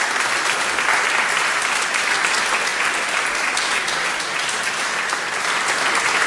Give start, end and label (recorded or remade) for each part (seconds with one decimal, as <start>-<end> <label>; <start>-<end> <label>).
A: 0.0-6.3 recorded